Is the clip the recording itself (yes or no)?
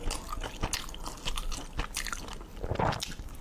yes